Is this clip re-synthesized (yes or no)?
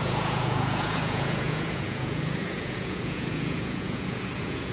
yes